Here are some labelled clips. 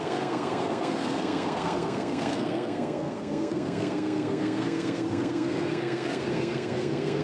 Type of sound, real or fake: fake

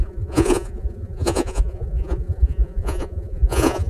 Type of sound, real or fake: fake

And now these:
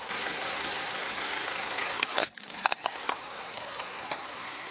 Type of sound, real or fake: fake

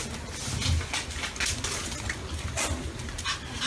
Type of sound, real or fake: real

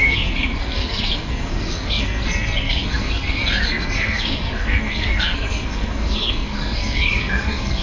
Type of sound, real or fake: fake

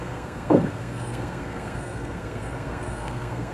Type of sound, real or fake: fake